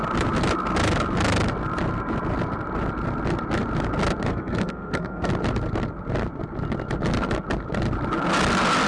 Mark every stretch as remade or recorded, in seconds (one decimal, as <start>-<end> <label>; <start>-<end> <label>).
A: 0.0-4.3 recorded; 4.3-5.3 remade; 5.3-8.9 recorded